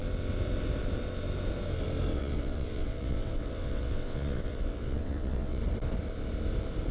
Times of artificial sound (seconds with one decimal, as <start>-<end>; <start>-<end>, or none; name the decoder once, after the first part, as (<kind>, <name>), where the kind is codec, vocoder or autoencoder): 2.1-5.6 (vocoder, WaveNeXt)